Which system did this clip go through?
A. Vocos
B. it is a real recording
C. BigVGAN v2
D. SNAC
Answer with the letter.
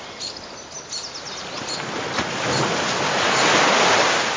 B